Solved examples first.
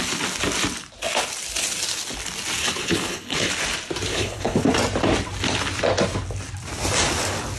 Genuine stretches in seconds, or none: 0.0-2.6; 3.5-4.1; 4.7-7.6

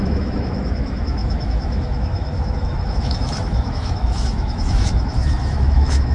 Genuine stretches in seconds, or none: none

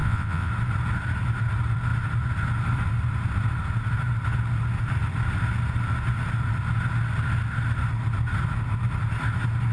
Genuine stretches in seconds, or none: 0.5-9.7

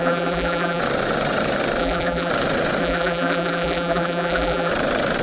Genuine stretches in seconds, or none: 0.8-1.8; 2.3-2.8; 4.7-5.2